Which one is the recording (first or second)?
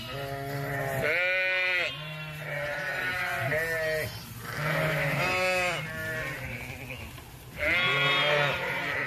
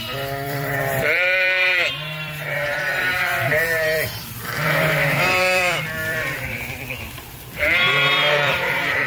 first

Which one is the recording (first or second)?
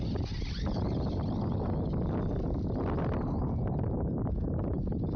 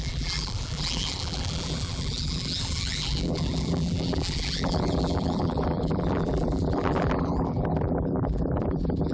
first